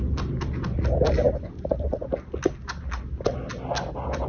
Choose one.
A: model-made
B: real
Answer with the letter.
B